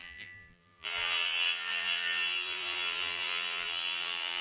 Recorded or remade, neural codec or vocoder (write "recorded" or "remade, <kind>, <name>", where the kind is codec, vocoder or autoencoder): remade, vocoder, BigVGAN v2